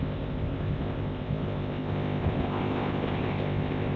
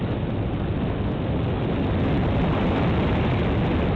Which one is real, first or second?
second